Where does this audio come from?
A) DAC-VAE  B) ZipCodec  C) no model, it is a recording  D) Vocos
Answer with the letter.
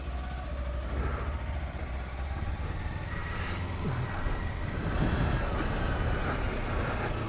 C